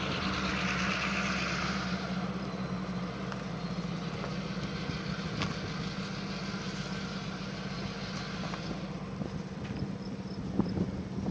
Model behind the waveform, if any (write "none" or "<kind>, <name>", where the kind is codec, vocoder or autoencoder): none